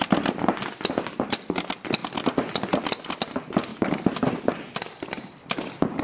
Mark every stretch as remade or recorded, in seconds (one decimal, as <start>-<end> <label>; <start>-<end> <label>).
0.0-3.7 recorded; 3.7-6.0 remade